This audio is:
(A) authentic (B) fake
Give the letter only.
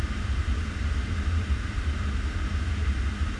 B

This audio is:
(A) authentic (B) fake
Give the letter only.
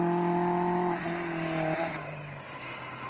A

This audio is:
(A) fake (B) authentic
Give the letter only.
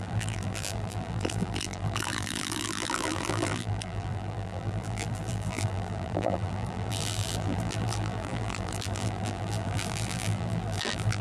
A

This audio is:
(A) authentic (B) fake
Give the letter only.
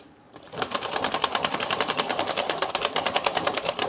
B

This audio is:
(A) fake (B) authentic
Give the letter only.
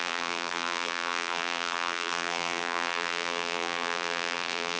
A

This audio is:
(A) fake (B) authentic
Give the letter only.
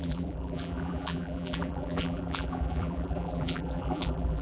A